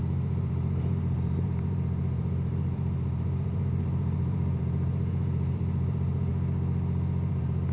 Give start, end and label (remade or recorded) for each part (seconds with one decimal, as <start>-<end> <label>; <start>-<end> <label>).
0.0-6.3 remade; 6.3-7.3 recorded; 7.3-7.7 remade